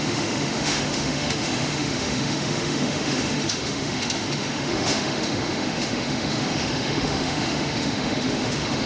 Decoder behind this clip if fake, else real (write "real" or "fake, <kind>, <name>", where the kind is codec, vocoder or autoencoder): fake, autoencoder, DAC-VAE